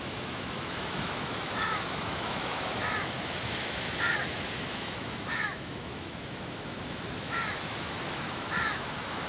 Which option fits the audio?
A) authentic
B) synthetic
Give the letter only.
B